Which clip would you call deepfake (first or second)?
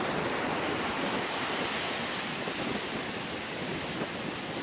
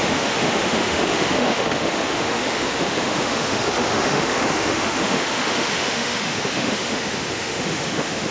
second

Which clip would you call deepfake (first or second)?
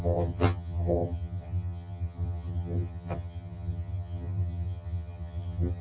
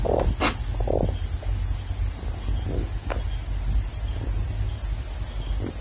first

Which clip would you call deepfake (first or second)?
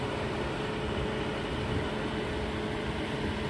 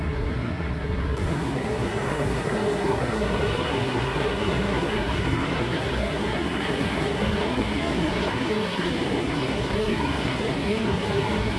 second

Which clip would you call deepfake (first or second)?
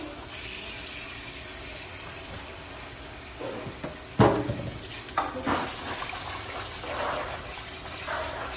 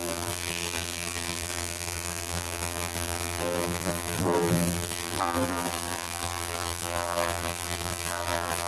second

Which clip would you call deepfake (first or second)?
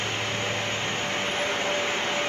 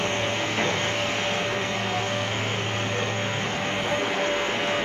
second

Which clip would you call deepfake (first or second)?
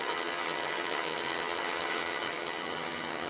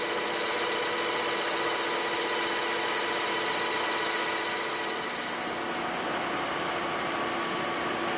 first